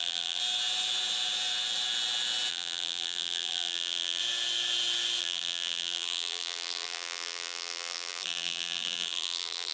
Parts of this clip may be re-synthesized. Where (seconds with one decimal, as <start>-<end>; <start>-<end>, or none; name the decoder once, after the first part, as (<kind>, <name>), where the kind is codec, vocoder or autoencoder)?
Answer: 0.0-0.4 (vocoder, BigVGAN v2); 2.5-4.2; 5.2-9.7